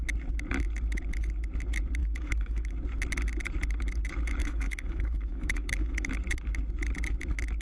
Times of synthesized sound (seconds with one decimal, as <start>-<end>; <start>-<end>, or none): 2.0-2.7; 4.4-6.1